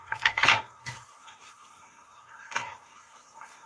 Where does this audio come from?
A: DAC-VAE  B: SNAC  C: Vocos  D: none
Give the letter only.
B